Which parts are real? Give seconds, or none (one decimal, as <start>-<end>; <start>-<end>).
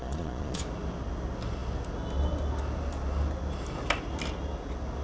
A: 0.6-5.0